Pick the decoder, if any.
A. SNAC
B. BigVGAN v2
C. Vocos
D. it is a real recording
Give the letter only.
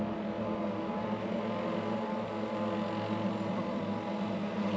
D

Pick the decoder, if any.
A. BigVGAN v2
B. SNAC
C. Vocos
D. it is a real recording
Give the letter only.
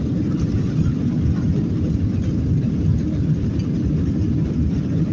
D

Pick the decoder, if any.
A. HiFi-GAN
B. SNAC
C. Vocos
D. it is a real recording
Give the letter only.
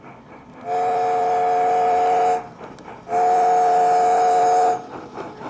D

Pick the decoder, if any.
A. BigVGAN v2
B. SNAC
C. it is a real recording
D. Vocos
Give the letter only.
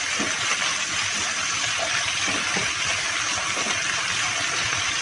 C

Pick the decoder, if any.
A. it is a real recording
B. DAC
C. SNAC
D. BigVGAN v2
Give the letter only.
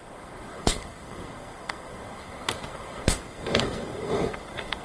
C